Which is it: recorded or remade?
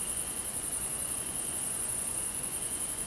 remade